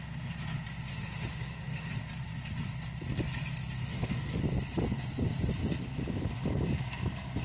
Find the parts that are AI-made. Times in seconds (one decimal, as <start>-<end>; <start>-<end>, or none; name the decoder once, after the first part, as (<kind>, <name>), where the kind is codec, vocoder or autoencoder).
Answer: 0.9-1.9 (autoencoder, DAC-VAE); 3.8-4.4